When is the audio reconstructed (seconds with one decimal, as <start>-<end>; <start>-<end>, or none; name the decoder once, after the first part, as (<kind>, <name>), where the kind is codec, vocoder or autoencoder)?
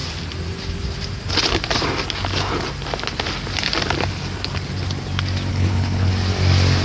5.5-6.1 (codec, HILCodec)